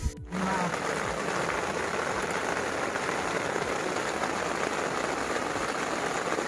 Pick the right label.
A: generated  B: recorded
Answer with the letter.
B